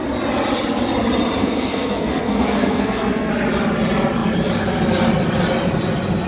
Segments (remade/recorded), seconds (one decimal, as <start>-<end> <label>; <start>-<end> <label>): 0.0-1.4 recorded; 1.4-3.3 remade; 3.3-6.3 recorded